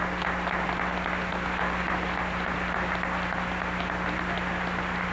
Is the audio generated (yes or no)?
no